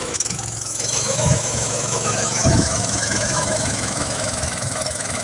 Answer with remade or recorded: remade